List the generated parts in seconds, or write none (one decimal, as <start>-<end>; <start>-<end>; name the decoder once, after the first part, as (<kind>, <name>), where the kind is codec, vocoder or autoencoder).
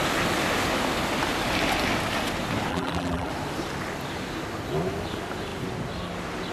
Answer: 2.7-3.3 (vocoder, BigVGAN v2)